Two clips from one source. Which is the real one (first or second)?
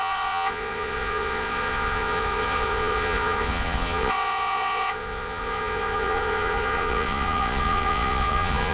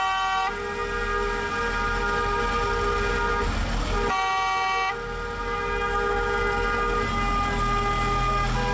second